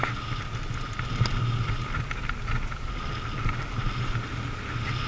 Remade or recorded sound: recorded